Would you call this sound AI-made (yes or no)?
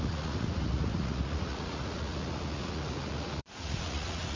yes